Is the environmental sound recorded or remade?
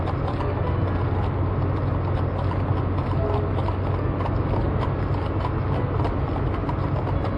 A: recorded